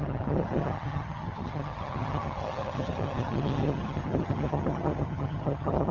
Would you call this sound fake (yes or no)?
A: yes